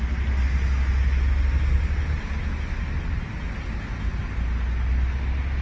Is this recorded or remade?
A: recorded